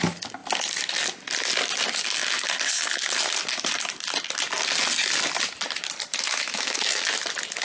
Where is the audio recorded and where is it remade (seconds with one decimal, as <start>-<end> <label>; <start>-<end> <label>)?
0.0-6.1 recorded; 6.1-7.0 remade; 7.0-7.6 recorded